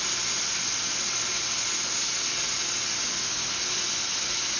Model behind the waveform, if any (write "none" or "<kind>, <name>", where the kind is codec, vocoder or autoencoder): none